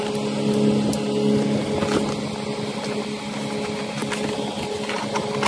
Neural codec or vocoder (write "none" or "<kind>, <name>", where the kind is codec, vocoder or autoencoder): none